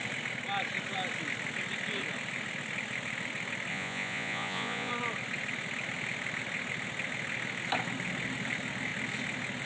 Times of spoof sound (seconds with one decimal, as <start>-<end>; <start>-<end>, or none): 3.7-4.9